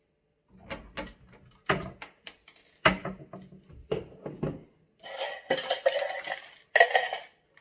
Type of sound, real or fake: real